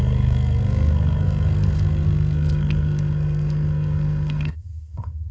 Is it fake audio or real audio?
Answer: fake